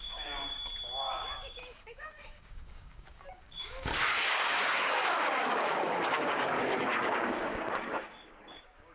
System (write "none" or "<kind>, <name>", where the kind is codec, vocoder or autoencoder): codec, DAC